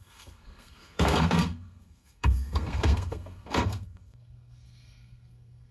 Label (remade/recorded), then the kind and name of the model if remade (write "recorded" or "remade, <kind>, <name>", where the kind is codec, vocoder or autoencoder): remade, codec, SNAC